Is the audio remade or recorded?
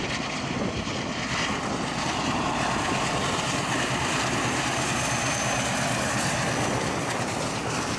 remade